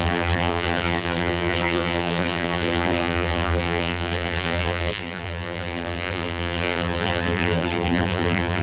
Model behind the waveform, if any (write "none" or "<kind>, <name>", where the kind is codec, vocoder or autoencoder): vocoder, BigVGAN v2